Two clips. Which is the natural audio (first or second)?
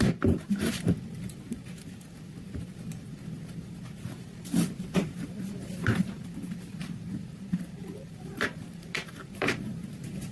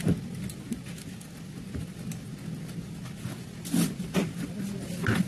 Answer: second